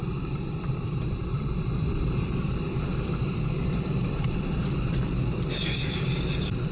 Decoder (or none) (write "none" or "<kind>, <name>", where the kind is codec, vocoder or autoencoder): vocoder, BigVGAN v2